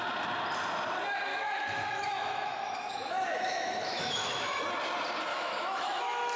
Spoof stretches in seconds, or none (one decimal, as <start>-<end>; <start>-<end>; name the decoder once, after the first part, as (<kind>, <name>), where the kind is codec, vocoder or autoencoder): 1.3-4.6 (autoencoder, DAC-VAE); 5.3-6.4